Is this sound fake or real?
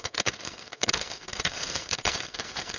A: fake